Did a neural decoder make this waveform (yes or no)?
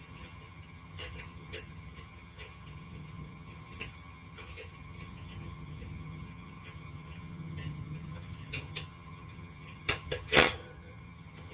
yes